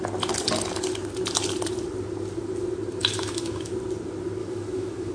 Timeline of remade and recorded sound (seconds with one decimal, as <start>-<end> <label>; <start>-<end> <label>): 0.0-3.0 recorded; 3.0-3.7 remade; 3.7-4.4 recorded; 4.4-5.1 remade

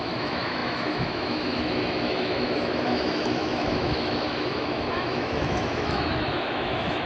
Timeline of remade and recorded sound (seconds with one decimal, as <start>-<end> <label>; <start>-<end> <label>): 0.0-7.1 remade

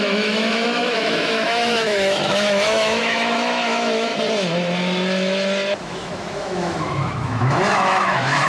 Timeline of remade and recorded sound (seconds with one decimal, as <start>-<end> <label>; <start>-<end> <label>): 0.0-4.1 remade; 4.1-5.8 recorded; 5.8-8.5 remade

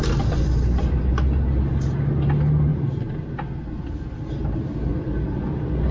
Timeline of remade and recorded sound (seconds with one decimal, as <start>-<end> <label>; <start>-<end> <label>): 0.0-5.9 recorded

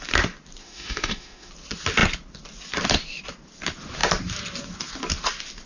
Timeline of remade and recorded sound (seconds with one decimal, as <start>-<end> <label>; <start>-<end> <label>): 0.0-0.6 recorded; 0.6-1.5 remade; 1.5-5.7 recorded

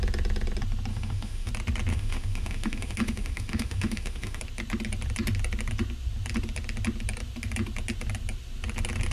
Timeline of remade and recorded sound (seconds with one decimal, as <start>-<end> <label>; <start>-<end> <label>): 0.0-0.9 recorded; 0.9-1.5 remade; 1.5-1.9 recorded; 1.9-4.4 remade; 4.4-9.1 recorded

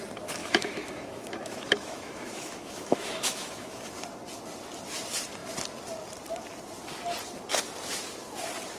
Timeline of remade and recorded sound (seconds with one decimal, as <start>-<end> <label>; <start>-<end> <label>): 0.0-0.4 recorded; 0.4-3.9 remade; 3.9-8.8 recorded

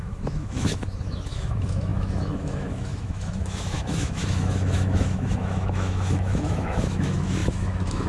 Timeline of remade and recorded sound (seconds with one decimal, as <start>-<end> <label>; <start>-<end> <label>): 0.0-8.1 remade